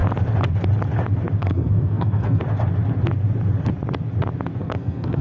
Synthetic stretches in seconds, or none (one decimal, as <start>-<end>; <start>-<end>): 1.4-2.4; 4.6-5.2